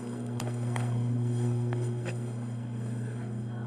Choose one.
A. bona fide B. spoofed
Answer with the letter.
B